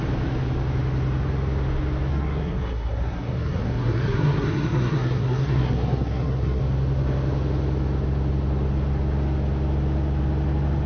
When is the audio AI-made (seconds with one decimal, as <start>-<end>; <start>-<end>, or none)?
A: 2.1-6.6